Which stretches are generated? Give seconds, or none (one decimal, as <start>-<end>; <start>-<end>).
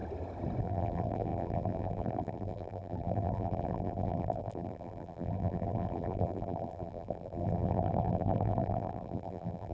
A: 0.6-9.7